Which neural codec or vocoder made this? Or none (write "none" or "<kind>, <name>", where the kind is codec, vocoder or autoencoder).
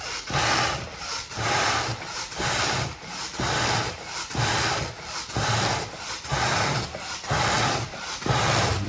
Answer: vocoder, BigVGAN v2